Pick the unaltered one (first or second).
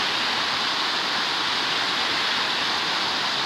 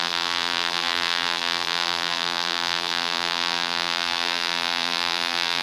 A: first